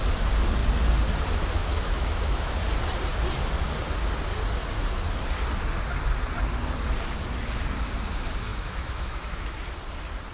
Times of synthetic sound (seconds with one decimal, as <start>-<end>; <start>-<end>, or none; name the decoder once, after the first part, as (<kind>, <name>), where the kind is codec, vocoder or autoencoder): 1.6-2.5 (autoencoder, DAC-VAE); 8.5-9.5